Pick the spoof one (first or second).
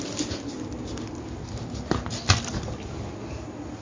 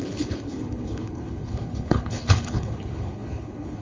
second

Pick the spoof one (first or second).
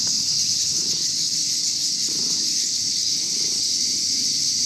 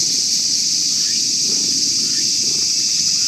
first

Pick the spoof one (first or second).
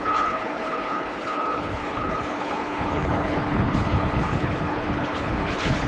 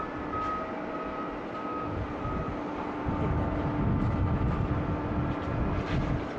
first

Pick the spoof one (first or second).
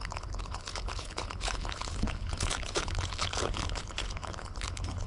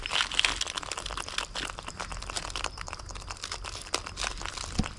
first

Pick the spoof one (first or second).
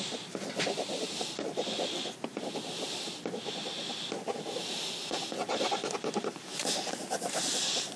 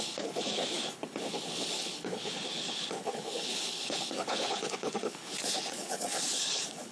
second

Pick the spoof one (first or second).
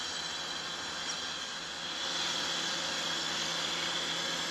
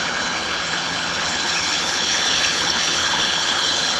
second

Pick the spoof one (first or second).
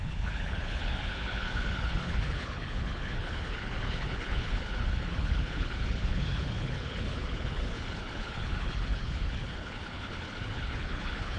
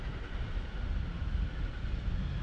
first